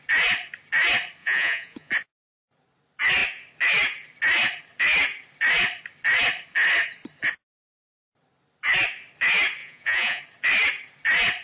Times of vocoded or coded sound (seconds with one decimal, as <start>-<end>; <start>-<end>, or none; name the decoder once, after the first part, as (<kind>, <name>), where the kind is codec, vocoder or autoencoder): 1.2-1.9 (vocoder, Vocos); 9.6-10.2